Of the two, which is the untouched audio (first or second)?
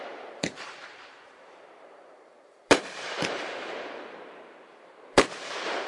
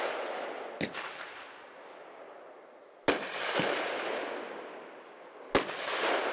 second